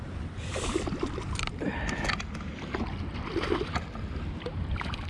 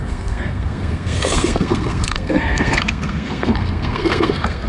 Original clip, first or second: first